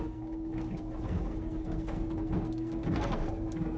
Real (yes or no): no